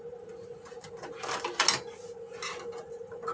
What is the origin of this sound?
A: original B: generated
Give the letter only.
A